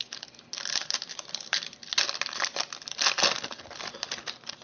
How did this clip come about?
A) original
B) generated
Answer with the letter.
A